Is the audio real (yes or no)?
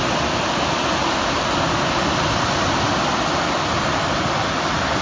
yes